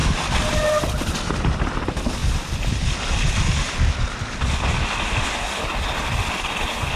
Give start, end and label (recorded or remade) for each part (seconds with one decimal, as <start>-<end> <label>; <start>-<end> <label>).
0.0-7.0 recorded